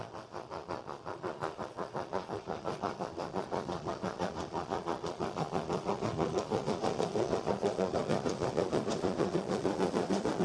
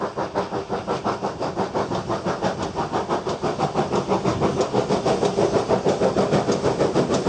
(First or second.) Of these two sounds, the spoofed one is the first